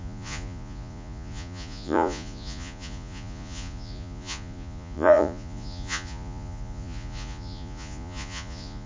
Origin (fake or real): fake